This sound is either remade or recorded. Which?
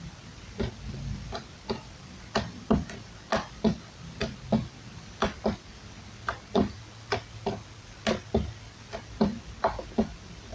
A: recorded